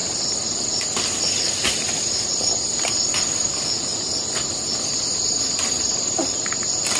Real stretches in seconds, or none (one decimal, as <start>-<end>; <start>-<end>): 0.0-7.0